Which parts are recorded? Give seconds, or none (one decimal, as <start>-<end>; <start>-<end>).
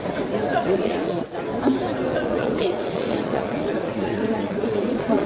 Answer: 0.0-0.5; 1.4-2.1